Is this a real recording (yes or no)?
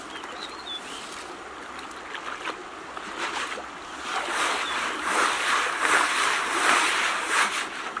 yes